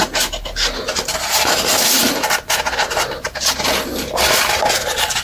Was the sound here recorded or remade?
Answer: recorded